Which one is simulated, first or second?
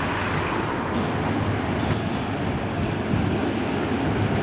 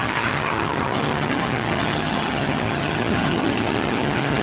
second